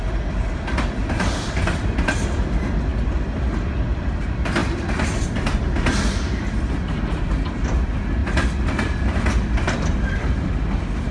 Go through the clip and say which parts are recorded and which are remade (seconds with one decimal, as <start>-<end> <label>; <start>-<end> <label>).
0.0-1.0 recorded; 1.0-2.0 remade; 2.0-4.6 recorded; 4.6-5.6 remade; 5.6-11.1 recorded